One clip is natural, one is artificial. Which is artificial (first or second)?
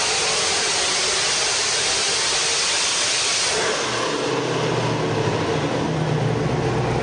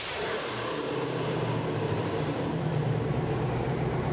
second